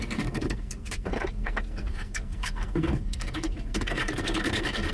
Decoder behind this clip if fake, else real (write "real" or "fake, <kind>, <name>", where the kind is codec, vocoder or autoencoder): fake, codec, SNAC